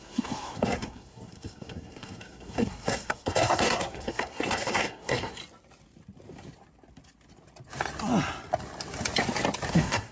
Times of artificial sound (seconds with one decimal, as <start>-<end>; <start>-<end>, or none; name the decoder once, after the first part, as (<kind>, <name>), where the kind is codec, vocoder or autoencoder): 0.0-5.4 (codec, SNAC); 9.7-10.1

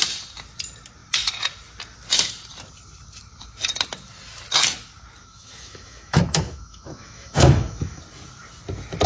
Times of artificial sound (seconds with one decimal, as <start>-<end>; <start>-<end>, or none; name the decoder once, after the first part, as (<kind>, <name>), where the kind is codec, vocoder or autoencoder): 5.2-8.0 (autoencoder, DAC-VAE)

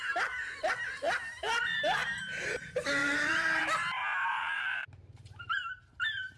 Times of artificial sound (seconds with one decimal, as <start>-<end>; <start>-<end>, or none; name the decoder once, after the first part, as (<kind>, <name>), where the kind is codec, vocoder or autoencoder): 2.0-2.6 (vocoder, BigVGAN v2); 3.0-3.6; 4.4-6.4

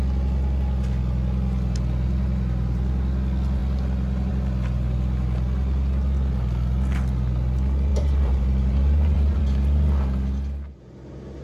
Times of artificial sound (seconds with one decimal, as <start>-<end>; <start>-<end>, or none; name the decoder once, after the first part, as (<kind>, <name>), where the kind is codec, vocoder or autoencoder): 7.9-9.4 (vocoder, BigVGAN v2)

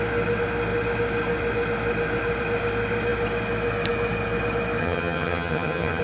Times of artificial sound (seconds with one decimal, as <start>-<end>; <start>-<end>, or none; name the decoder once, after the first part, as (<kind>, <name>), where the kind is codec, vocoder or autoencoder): 4.8-6.0 (vocoder, HiFi-GAN)

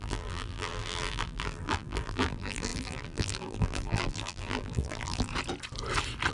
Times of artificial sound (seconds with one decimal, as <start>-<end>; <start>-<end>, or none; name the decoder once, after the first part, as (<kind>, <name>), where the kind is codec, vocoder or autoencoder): 0.0-5.3 (vocoder, BigVGAN v2)